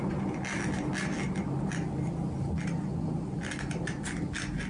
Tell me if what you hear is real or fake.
real